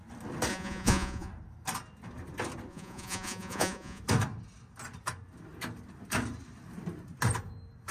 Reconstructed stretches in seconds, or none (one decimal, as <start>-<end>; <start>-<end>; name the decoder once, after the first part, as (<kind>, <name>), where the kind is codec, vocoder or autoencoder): 0.5-1.3 (vocoder, Vocos); 2.7-4.0